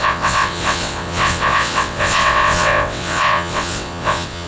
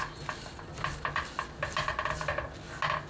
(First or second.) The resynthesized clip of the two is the first